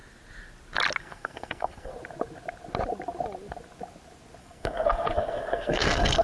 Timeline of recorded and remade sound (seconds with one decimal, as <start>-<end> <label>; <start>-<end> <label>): 0.0-1.0 recorded; 1.0-1.9 remade; 1.9-4.4 recorded; 4.4-6.2 remade